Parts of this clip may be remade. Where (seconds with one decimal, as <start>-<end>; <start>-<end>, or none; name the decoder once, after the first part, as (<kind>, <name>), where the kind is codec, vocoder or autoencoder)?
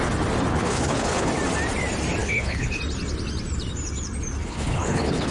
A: 0.5-1.3 (codec, HILCodec); 2.2-2.8; 4.4-5.3